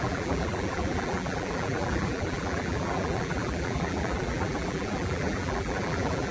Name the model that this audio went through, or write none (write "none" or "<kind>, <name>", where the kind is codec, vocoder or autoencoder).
vocoder, BigVGAN v2